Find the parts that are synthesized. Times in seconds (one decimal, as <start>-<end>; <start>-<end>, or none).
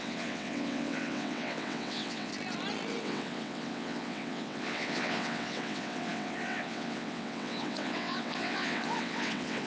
0.0-2.3; 3.0-9.7